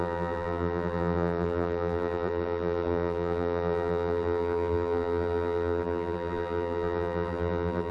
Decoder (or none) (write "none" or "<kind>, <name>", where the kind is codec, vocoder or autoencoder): vocoder, BigVGAN v2